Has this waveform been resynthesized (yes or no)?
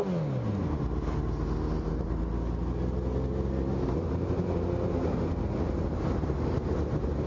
no